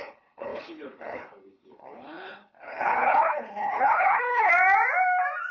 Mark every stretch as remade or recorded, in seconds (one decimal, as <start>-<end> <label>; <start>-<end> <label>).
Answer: 0.0-4.5 remade; 4.5-5.5 recorded